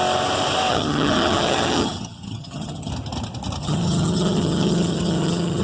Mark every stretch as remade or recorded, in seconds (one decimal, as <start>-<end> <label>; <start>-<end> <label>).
0.0-0.7 recorded; 0.7-2.9 remade; 2.9-3.6 recorded; 3.6-5.6 remade